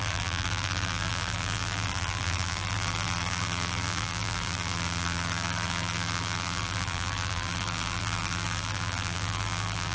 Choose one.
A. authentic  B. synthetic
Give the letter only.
B